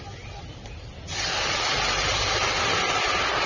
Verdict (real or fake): real